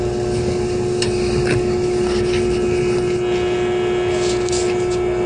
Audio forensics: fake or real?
real